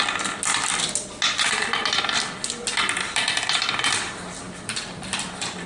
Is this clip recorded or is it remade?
recorded